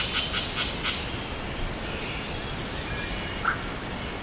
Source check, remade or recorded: recorded